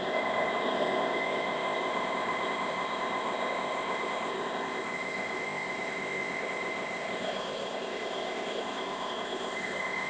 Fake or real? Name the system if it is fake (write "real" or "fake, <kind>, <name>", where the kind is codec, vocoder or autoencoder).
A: fake, codec, ZipCodec